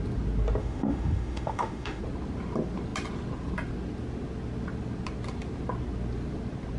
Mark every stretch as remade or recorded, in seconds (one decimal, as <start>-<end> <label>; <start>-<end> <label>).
0.0-0.6 recorded; 0.6-2.0 remade; 2.0-6.8 recorded